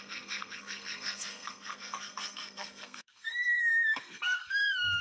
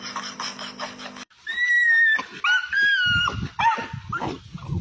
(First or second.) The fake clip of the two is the first